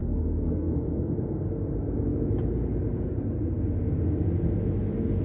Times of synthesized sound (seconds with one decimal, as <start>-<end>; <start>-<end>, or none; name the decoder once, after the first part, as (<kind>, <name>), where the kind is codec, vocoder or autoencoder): 0.0-1.1 (codec, SNAC)